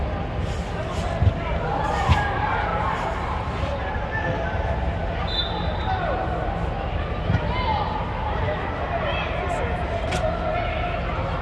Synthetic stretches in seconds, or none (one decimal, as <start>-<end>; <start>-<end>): 2.7-4.0